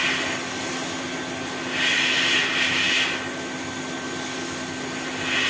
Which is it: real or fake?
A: real